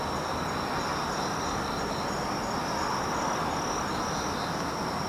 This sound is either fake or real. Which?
real